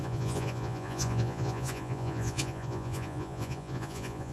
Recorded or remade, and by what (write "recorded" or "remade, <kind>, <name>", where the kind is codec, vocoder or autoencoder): remade, vocoder, Vocos